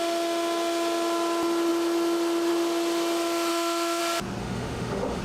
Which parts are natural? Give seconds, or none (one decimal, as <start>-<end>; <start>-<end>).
0.0-3.5; 4.0-4.4